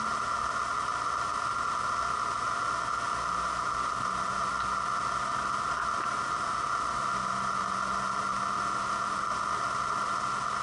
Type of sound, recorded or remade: recorded